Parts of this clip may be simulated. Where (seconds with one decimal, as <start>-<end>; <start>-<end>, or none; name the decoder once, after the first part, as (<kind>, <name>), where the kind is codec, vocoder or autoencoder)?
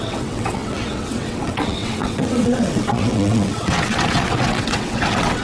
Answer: 0.0-5.4 (vocoder, WaveNeXt)